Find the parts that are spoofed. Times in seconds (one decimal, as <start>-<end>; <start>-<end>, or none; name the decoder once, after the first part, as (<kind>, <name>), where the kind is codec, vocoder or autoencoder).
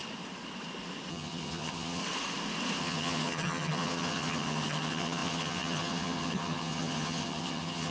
1.1-2.0 (vocoder, HiFi-GAN); 2.8-7.9